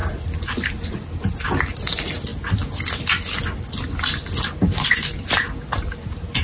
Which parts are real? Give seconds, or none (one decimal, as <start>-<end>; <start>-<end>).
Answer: 0.0-6.4